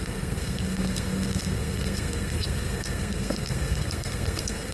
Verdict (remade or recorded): remade